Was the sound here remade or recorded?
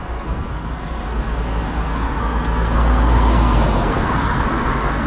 remade